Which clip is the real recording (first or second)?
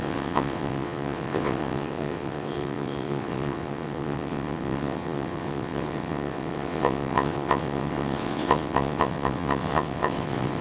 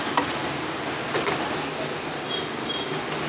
second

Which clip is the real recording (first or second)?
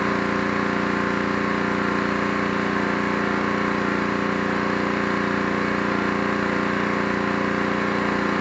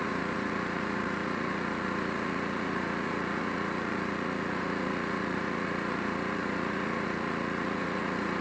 first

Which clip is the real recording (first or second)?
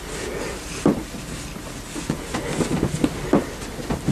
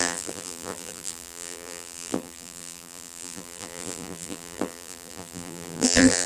first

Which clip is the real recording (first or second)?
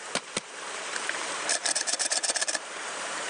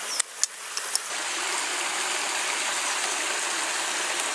second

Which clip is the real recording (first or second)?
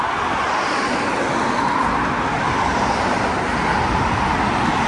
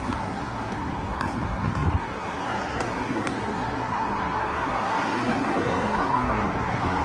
first